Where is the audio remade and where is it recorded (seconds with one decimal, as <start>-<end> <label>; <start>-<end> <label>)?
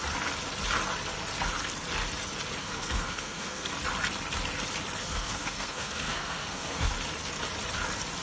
0.0-2.6 recorded; 2.6-3.7 remade; 3.7-5.0 recorded; 5.0-6.9 remade; 6.9-8.2 recorded